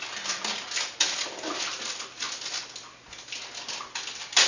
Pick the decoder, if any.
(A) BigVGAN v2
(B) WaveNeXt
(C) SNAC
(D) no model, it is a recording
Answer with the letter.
D